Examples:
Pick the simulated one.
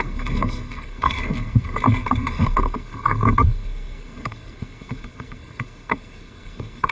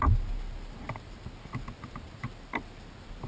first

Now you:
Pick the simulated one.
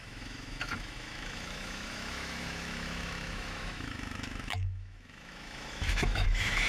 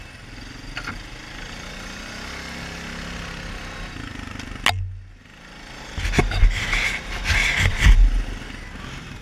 first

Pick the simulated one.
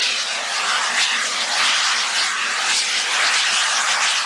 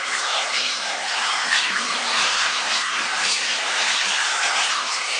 second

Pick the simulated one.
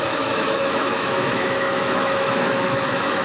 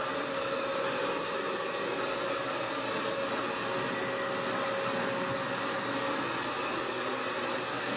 first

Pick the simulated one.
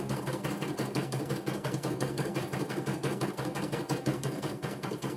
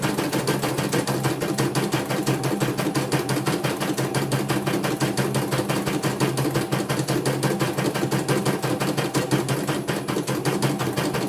first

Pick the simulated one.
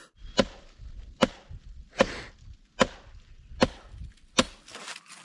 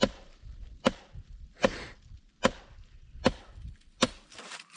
second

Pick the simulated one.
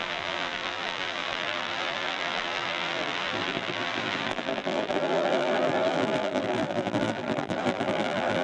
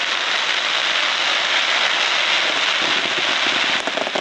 first